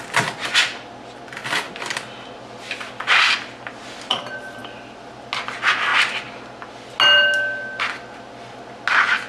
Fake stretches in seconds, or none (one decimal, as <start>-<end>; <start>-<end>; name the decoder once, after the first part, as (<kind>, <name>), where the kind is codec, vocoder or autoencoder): none